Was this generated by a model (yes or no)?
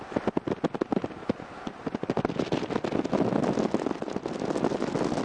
no